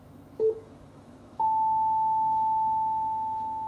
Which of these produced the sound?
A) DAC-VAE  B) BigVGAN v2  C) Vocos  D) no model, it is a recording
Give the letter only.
A